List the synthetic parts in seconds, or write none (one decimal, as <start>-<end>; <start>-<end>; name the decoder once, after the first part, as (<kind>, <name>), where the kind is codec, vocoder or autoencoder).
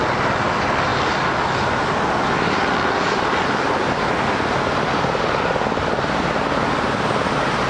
none